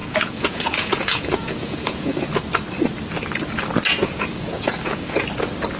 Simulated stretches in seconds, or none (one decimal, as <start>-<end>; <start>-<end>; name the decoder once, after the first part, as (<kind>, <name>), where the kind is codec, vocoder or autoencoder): 0.0-2.2 (vocoder, Vocos); 4.0-5.2